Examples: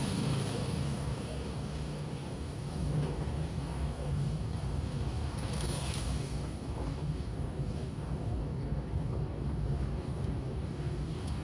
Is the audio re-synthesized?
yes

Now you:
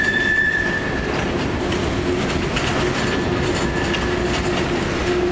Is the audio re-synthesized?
no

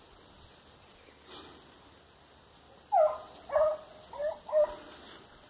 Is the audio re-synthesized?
no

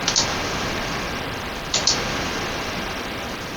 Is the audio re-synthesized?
yes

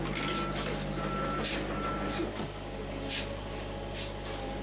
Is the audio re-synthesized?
no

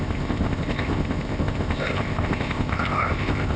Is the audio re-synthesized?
yes